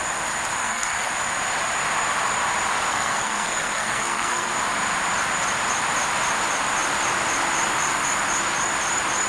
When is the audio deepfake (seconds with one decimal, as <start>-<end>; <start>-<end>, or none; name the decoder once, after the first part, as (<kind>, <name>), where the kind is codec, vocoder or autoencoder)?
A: 0.6-1.1 (codec, SNAC); 2.9-4.5